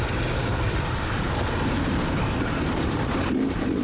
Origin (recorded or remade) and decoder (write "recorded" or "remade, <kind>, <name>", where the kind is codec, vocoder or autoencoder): remade, vocoder, BigVGAN v2